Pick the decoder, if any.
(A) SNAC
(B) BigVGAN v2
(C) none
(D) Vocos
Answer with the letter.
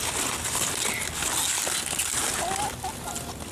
C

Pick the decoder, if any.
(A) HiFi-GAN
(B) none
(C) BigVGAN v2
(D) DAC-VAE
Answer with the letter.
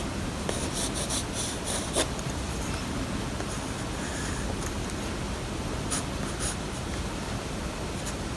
B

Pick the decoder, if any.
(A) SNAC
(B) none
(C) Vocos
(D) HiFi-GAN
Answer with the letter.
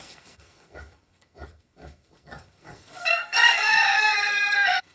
A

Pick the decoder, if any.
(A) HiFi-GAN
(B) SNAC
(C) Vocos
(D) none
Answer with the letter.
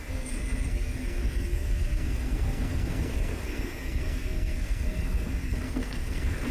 B